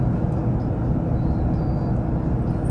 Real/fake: real